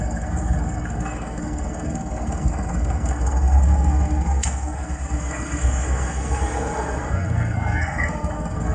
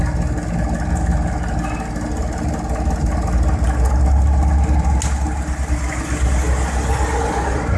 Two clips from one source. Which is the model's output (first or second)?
first